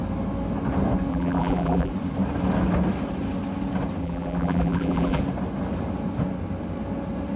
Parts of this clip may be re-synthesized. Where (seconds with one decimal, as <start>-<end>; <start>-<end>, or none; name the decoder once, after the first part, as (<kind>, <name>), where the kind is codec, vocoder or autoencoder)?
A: 1.1-1.9 (vocoder, BigVGAN v2); 4.0-5.2